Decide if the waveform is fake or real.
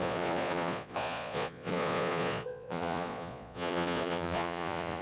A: fake